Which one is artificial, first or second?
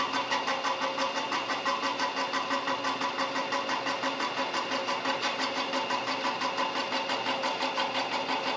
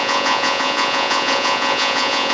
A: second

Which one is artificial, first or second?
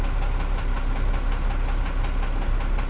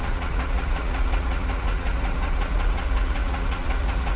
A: second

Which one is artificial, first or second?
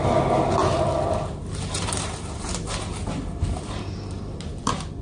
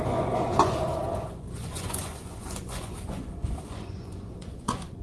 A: second